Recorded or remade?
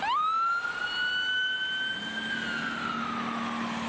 recorded